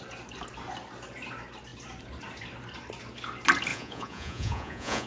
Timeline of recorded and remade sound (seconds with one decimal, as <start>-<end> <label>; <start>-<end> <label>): 0.0-3.7 recorded; 3.7-5.1 remade